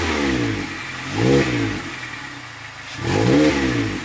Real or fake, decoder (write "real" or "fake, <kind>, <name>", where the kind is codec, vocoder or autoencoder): real